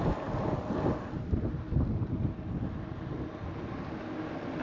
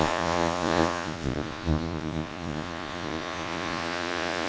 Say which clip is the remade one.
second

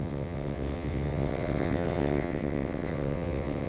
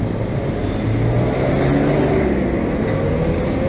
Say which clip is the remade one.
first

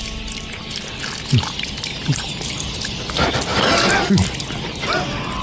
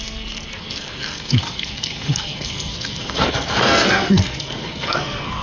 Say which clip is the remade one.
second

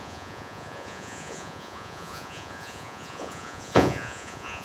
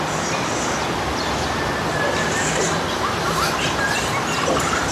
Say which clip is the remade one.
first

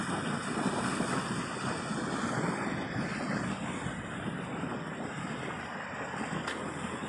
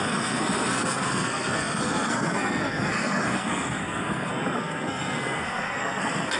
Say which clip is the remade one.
second